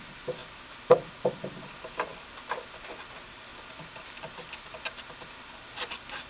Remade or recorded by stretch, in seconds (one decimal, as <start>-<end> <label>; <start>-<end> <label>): 0.0-2.1 recorded; 2.1-2.7 remade; 2.7-6.3 recorded